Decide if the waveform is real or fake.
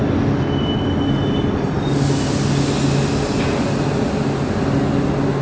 real